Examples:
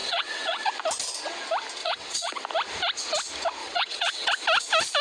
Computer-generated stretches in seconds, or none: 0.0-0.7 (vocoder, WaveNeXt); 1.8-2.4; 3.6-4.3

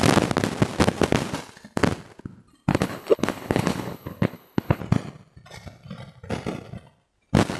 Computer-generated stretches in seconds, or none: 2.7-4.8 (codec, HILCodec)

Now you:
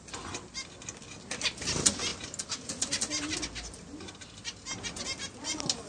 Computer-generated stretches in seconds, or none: none

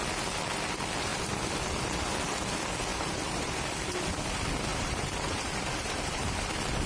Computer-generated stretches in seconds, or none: 2.9-3.5 (vocoder, BigVGAN v2); 4.7-6.4